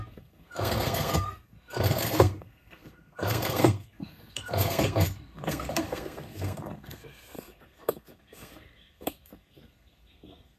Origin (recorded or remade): remade